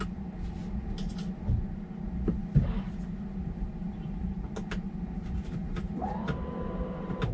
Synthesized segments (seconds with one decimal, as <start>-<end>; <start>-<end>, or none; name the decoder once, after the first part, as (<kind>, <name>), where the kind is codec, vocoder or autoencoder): none